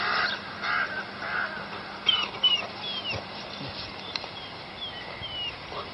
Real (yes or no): yes